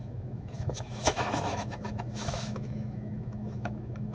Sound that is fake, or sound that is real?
fake